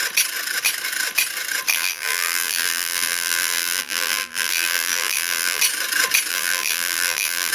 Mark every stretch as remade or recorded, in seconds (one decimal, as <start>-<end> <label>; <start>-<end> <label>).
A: 0.0-1.7 recorded; 1.7-5.6 remade; 5.6-6.3 recorded; 6.3-7.5 remade